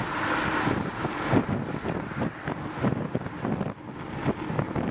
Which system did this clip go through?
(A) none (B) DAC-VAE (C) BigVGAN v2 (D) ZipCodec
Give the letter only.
A